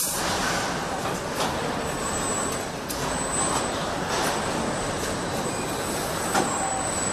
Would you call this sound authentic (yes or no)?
yes